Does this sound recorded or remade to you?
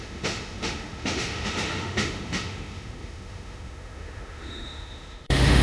remade